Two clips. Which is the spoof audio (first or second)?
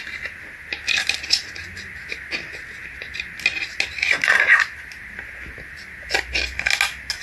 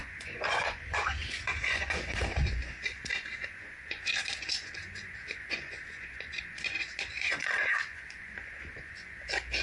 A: second